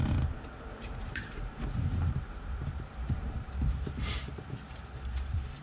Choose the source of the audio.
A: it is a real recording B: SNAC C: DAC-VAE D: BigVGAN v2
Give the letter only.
D